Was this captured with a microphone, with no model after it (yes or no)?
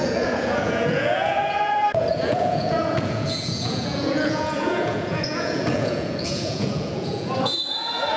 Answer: no